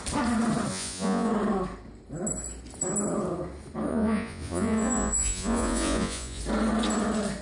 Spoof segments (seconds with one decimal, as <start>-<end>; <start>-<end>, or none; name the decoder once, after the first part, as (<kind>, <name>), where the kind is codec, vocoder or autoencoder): 0.7-1.3 (vocoder, Vocos); 3.9-6.4